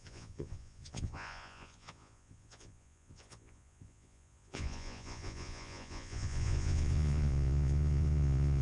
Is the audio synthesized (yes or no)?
yes